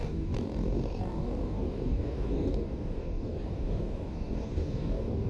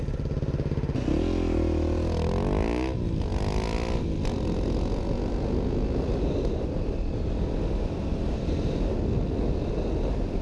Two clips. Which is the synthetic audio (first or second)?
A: first